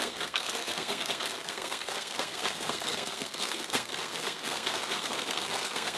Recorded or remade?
remade